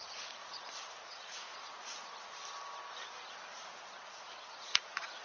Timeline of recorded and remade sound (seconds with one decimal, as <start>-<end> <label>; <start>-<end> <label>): 0.0-2.4 remade; 2.4-4.6 recorded; 4.6-5.2 remade